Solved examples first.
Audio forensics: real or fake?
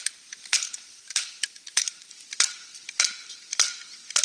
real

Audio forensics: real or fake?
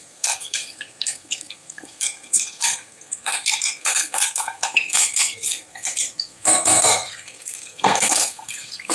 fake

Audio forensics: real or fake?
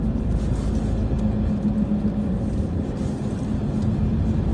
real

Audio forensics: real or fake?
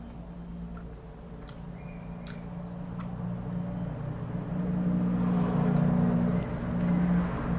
real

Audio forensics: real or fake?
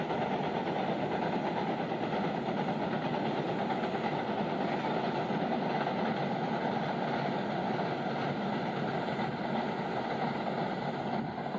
real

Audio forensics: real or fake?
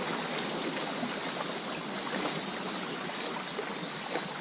real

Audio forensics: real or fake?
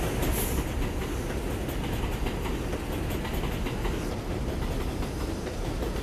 real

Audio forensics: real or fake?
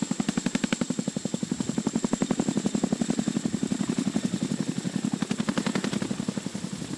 real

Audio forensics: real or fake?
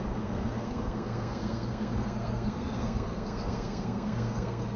fake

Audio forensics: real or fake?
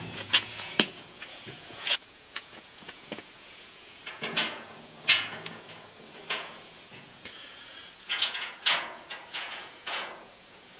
fake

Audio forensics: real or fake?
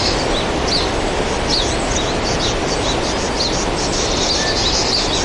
real